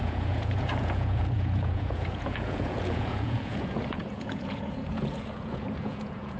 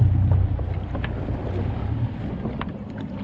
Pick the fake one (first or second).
first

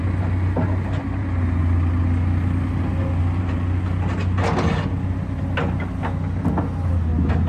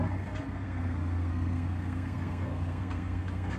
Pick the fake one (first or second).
second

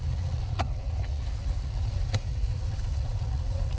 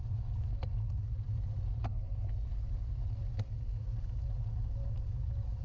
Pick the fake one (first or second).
first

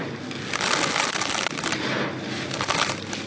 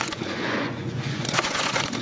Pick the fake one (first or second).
second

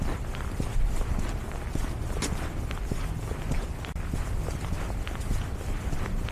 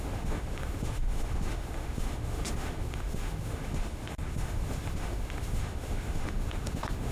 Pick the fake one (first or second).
second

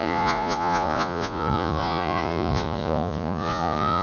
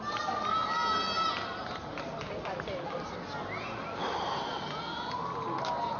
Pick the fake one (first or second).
first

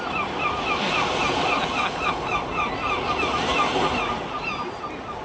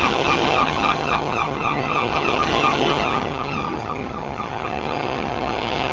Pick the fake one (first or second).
second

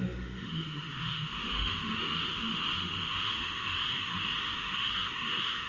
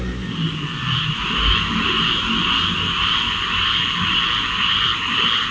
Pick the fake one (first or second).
first